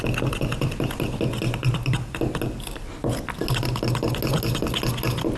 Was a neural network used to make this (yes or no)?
no